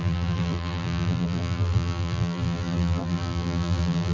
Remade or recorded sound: remade